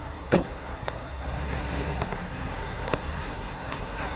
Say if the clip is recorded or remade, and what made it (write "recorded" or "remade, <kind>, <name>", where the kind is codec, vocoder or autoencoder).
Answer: remade, codec, SNAC